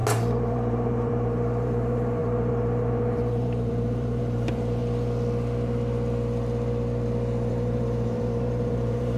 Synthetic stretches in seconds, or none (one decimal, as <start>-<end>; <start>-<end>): 0.5-4.8; 7.5-9.2